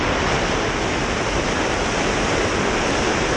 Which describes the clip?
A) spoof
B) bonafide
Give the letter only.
B